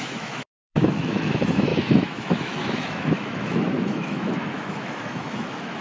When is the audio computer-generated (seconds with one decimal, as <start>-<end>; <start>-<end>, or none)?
0.0-5.8